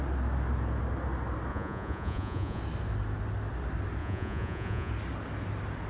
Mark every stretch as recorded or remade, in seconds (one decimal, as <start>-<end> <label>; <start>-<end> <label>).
0.0-1.5 recorded; 1.5-2.6 remade; 2.6-4.0 recorded; 4.0-4.9 remade; 4.9-5.9 recorded